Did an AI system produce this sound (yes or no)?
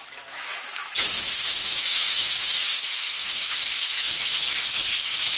yes